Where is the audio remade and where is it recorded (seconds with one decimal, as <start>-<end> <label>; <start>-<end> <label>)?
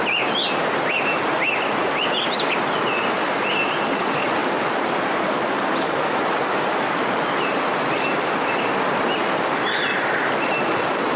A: 0.0-11.2 recorded